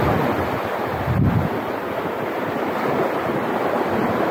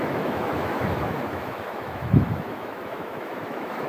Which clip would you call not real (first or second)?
second